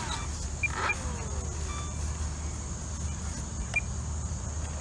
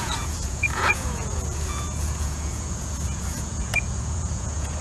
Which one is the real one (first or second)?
first